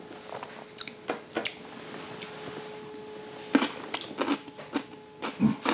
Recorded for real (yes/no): yes